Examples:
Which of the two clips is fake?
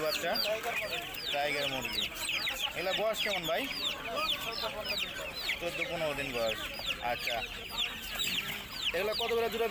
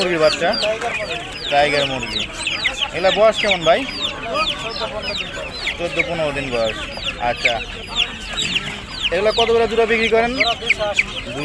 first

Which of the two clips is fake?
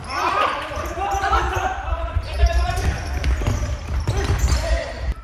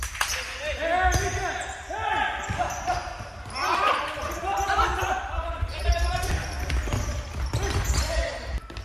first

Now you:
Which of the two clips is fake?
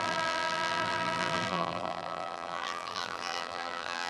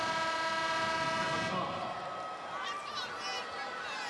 first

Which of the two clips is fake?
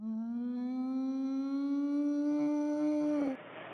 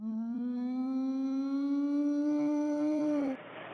second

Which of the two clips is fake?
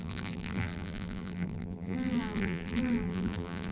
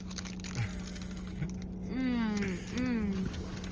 first